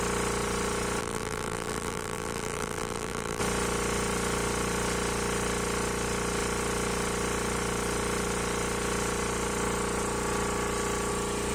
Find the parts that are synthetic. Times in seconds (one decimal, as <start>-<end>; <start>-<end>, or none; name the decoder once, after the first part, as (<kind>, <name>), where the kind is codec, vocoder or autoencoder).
1.0-3.4 (vocoder, BigVGAN v2)